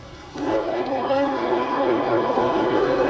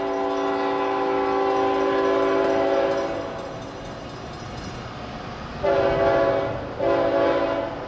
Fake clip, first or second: first